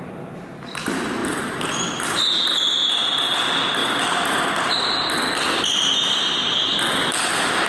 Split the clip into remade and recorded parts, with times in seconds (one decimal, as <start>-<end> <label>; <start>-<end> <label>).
0.0-7.7 recorded